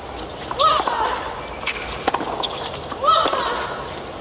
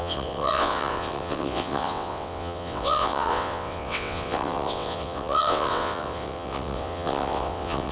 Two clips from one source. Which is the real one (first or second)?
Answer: first